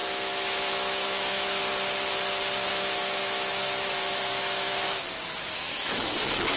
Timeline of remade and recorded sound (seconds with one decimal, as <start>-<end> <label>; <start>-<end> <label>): 0.0-1.6 remade; 1.6-2.7 recorded; 2.7-4.7 remade; 4.7-5.7 recorded; 5.7-6.6 remade